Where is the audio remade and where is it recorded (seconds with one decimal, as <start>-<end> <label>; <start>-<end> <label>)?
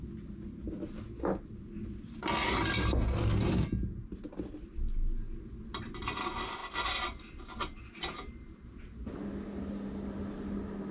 0.0-10.9 recorded